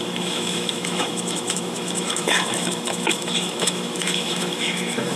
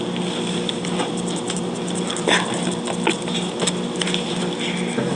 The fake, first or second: first